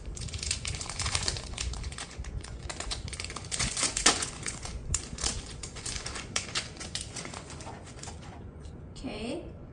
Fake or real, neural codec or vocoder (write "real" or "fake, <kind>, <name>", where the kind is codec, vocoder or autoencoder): fake, vocoder, Vocos